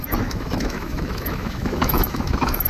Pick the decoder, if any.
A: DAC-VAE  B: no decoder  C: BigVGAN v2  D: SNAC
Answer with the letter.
A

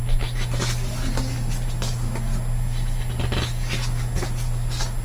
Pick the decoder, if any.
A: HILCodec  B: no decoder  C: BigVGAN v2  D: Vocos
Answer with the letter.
B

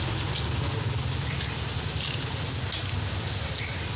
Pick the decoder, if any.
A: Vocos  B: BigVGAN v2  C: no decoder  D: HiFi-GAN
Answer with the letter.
C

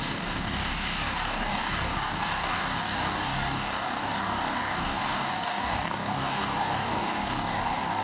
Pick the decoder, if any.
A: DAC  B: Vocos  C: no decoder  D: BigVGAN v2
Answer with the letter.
A